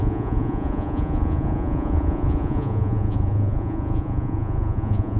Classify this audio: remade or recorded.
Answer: remade